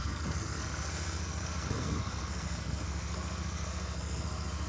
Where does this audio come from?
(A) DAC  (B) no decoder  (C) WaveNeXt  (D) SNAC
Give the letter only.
D